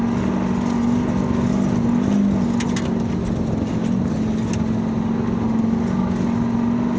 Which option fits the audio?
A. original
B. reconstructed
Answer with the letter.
A